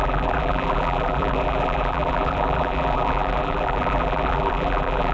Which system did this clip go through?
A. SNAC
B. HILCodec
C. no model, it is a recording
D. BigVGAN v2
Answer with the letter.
D